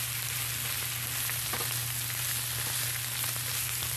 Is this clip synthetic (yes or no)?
no